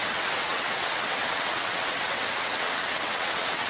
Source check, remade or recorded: remade